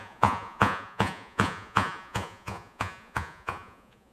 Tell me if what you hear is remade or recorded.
remade